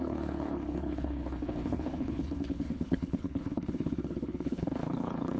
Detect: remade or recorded remade